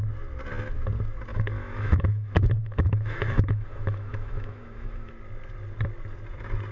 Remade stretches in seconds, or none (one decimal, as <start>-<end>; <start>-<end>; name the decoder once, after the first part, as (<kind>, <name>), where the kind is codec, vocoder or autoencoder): 1.3-5.1 (autoencoder, DAC-VAE)